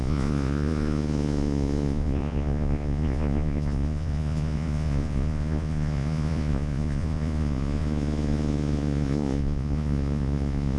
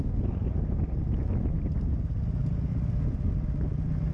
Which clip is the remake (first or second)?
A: first